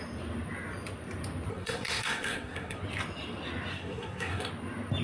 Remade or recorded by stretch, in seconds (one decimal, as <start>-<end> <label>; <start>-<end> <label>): 0.0-1.5 recorded; 1.5-2.8 remade; 2.8-3.7 recorded; 3.7-4.5 remade; 4.5-5.0 recorded